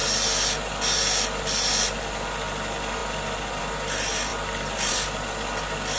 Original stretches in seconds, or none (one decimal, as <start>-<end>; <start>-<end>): 0.0-6.0